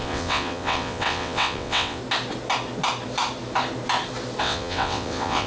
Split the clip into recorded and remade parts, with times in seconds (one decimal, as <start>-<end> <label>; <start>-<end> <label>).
0.0-2.0 remade; 2.0-4.4 recorded; 4.4-5.5 remade